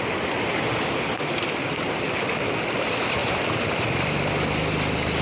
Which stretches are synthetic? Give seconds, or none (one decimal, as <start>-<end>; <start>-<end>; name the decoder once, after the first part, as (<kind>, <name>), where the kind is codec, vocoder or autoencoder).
3.2-4.5 (vocoder, BigVGAN v2)